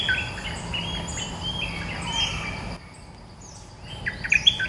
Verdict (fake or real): real